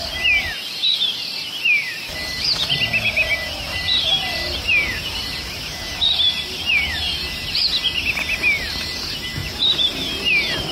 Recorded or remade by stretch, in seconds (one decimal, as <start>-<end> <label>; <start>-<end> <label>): 0.0-0.8 recorded; 0.8-2.0 remade; 2.0-2.9 recorded; 2.9-7.6 remade; 7.6-9.4 recorded; 9.4-9.9 remade; 9.9-10.7 recorded